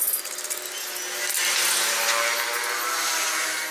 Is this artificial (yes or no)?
no